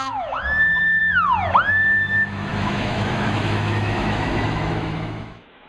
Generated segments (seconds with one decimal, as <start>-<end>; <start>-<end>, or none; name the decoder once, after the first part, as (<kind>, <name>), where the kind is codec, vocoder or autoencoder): 0.0-1.0 (autoencoder, DAC-VAE); 1.7-5.7